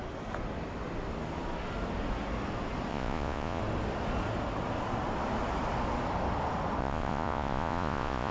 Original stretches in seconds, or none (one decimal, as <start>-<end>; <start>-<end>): 0.0-2.9; 3.6-6.8